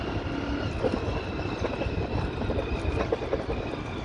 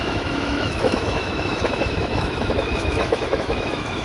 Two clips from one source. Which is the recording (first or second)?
first